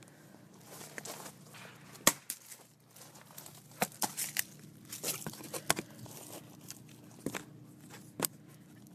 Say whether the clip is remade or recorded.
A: recorded